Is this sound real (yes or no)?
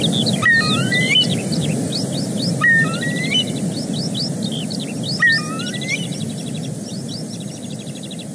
yes